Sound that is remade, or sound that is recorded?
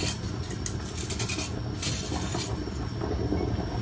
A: recorded